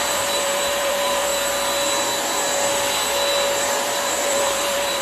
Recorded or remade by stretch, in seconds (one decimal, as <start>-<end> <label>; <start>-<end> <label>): 0.0-1.3 remade; 1.3-3.6 recorded; 3.6-5.0 remade